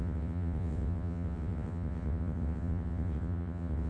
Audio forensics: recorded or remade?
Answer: remade